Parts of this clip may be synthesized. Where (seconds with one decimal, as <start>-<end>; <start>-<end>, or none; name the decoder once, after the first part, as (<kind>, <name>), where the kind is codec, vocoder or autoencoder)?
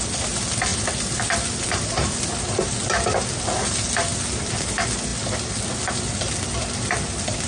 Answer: none